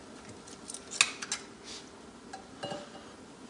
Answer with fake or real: real